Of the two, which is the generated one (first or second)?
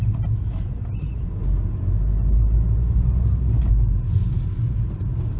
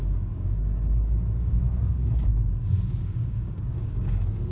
second